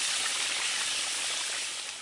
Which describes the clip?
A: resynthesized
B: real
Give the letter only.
B